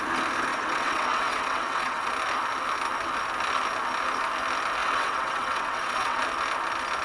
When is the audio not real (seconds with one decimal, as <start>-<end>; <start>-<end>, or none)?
0.5-2.1; 4.8-6.2